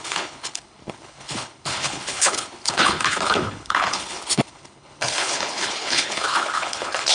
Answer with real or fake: fake